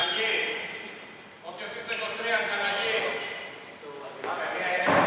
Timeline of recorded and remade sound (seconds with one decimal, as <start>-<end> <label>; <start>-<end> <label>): 0.0-5.1 recorded